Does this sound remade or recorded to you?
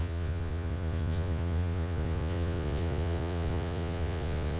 remade